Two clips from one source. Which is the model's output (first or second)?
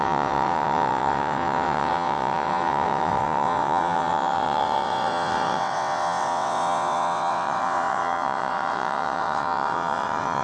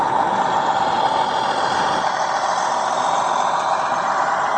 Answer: first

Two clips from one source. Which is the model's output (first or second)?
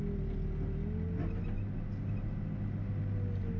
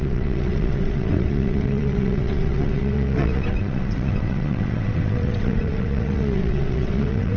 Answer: second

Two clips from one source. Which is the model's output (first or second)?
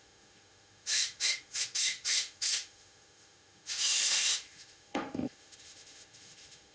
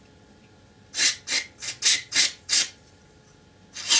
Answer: first